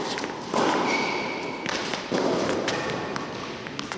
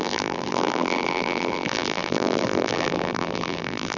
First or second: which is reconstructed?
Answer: second